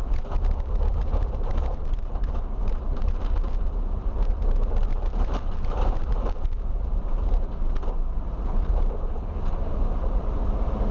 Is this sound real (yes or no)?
no